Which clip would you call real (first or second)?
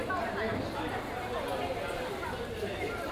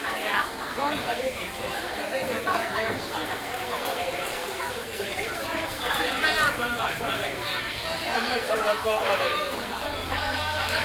first